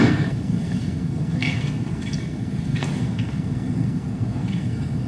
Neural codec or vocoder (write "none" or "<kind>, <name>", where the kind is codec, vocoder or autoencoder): codec, SNAC